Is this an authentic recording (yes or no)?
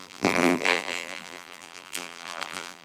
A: no